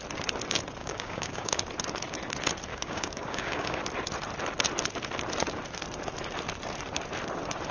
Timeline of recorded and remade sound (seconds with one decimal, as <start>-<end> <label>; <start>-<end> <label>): 0.0-0.8 recorded; 0.8-1.6 remade; 1.6-2.7 recorded; 2.7-3.8 remade; 3.8-7.7 recorded